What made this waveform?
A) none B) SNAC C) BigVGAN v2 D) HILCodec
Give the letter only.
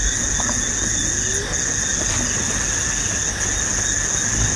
A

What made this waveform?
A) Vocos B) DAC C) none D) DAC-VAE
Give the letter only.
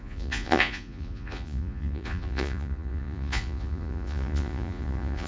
A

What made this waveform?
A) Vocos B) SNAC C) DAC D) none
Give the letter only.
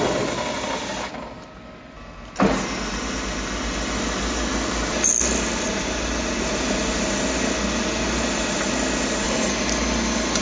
D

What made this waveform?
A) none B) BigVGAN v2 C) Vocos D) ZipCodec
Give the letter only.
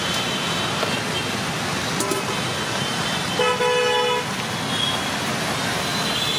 A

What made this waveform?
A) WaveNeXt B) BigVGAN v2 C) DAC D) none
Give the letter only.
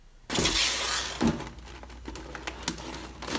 D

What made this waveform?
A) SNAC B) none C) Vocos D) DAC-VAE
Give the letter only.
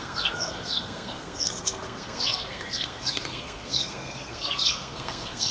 A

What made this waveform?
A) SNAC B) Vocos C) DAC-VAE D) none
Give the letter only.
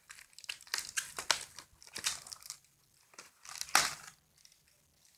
D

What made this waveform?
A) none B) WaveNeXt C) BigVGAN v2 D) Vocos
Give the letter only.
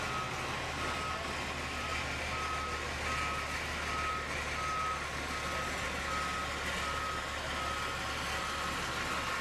A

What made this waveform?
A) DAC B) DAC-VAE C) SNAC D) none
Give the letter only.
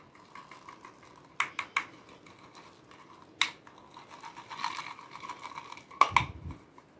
D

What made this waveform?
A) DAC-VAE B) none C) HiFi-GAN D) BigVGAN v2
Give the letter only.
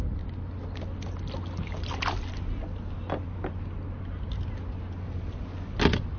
B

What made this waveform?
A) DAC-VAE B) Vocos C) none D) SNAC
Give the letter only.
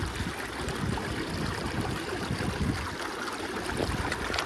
C